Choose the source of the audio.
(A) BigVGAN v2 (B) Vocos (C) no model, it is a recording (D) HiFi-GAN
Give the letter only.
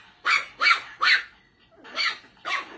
C